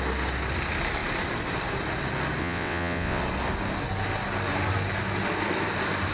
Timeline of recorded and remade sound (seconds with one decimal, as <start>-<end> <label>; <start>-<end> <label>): 0.0-2.4 recorded; 2.4-3.2 remade; 3.2-6.1 recorded